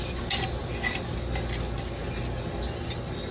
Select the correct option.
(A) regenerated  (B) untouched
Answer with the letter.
B